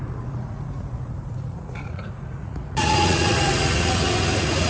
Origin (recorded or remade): remade